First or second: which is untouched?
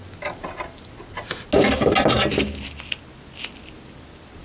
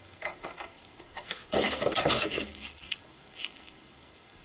first